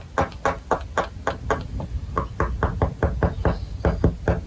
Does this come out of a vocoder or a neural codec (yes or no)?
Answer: no